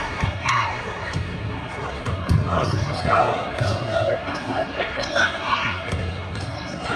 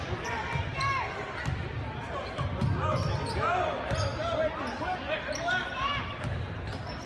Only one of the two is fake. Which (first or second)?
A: first